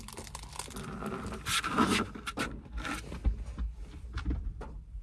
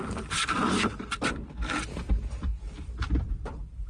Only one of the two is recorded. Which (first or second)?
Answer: first